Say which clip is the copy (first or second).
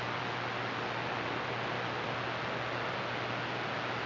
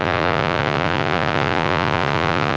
second